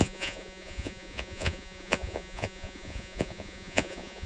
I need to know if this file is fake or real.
fake